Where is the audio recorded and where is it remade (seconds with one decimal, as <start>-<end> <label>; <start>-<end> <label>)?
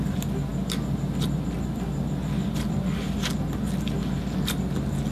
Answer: 0.0-5.1 recorded